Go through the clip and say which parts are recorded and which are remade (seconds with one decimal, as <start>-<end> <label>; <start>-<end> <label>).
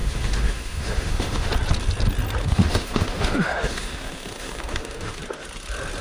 0.0-1.5 remade; 1.5-2.4 recorded; 2.4-5.2 remade; 5.2-6.0 recorded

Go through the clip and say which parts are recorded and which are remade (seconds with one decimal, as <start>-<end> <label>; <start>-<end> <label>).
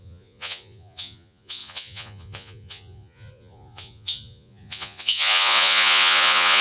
0.0-6.6 remade